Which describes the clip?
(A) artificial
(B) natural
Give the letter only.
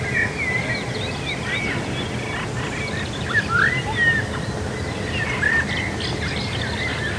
B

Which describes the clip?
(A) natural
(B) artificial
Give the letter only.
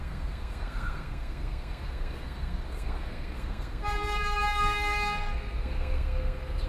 B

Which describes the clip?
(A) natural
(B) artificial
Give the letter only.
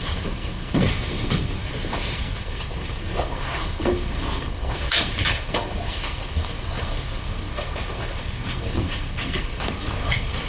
B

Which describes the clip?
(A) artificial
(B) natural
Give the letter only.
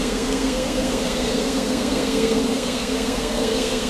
A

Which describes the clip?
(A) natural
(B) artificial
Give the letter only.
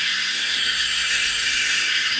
B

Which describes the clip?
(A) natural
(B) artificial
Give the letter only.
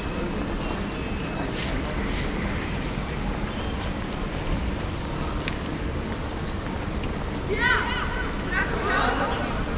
A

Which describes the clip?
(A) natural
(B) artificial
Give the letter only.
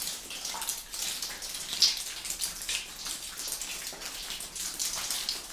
A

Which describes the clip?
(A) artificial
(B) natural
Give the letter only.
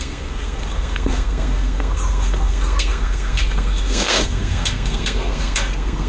A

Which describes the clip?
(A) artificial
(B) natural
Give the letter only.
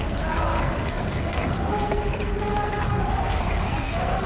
A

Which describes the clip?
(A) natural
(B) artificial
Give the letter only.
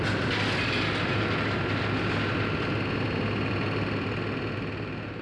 A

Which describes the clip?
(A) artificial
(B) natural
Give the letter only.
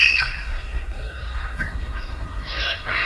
A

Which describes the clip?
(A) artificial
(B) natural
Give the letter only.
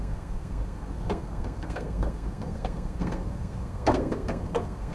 A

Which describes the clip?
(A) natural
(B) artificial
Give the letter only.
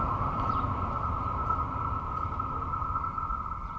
A